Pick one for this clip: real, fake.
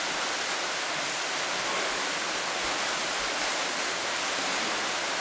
real